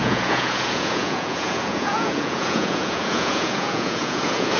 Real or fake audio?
fake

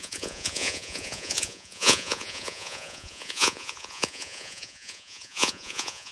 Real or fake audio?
fake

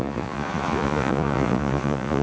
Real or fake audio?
fake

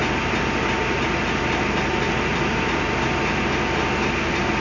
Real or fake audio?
real